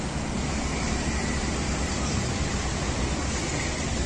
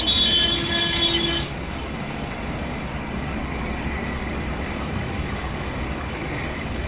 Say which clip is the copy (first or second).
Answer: second